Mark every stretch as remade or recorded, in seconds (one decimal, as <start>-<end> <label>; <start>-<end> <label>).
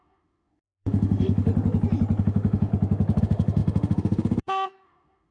0.0-1.5 remade; 1.5-2.2 recorded; 2.2-2.7 remade; 2.7-3.2 recorded; 3.2-5.3 remade